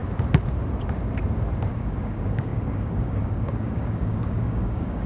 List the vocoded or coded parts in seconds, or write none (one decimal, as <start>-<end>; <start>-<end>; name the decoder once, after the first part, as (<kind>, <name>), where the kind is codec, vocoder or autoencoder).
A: 1.7-5.1 (codec, DAC)